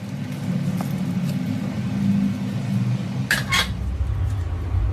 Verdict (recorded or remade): recorded